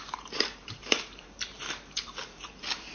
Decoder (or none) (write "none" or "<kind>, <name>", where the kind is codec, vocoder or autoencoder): vocoder, BigVGAN v2